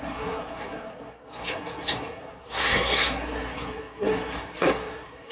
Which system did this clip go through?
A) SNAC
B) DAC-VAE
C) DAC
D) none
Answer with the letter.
A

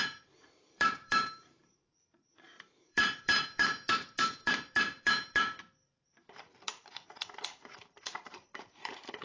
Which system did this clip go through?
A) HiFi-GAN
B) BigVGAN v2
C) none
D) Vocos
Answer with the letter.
B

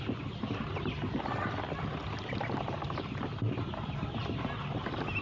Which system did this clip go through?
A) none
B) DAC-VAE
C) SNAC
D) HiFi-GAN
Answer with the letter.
A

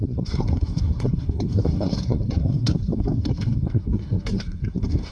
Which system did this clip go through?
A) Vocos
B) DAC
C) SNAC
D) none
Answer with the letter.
C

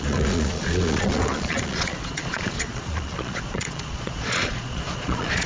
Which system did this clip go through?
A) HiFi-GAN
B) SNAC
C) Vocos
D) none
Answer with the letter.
C